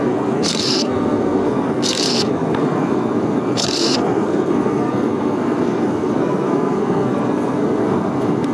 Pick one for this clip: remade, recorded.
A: remade